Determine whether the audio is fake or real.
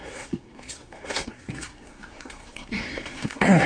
fake